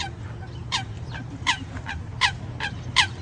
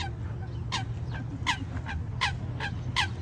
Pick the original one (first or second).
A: second